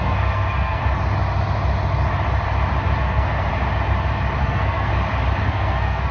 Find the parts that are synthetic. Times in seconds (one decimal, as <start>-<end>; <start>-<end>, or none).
0.0-0.8; 3.0-3.5; 4.4-4.9; 5.5-6.1